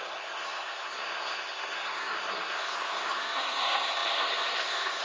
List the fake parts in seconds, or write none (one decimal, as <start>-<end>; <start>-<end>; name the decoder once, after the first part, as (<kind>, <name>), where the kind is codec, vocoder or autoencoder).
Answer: 0.0-5.0 (codec, SNAC)